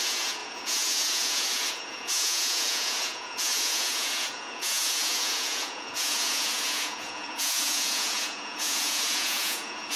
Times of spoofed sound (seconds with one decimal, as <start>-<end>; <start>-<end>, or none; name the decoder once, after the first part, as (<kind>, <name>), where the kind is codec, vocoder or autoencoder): 0.0-10.0 (vocoder, Vocos)

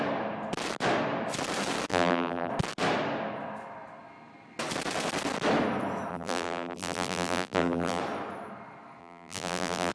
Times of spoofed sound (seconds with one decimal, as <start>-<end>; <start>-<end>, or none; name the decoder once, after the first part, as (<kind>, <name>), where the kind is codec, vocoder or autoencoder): 1.9-2.5 (vocoder, BigVGAN v2); 6.1-8.0; 9.0-9.9